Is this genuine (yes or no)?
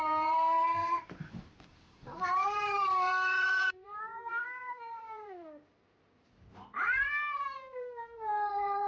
no